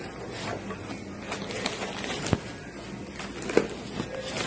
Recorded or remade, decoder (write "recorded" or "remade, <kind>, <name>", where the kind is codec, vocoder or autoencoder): recorded